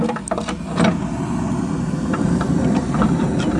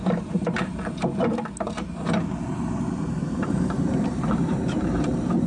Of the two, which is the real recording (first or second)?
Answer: first